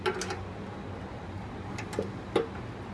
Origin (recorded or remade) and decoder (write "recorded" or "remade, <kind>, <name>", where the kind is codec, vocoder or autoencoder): recorded